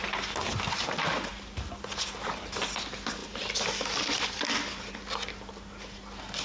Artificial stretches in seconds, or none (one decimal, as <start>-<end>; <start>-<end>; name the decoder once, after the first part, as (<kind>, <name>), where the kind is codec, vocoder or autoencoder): none